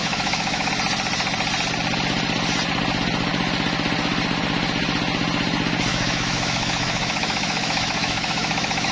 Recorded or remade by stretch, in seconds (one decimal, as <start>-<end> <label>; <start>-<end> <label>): 0.0-0.7 remade; 0.7-5.9 recorded; 5.9-8.9 remade